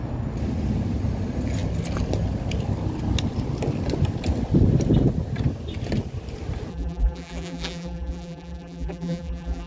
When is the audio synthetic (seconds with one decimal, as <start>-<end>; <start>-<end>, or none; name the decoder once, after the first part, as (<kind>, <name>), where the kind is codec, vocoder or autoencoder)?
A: 6.7-9.7 (vocoder, BigVGAN v2)